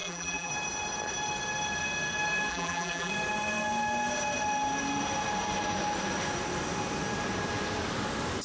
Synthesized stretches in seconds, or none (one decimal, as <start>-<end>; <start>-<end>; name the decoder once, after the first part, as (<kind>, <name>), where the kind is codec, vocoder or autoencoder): 0.0-0.5 (vocoder, BigVGAN v2); 2.5-3.1